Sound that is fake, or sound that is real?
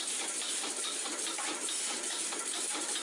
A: real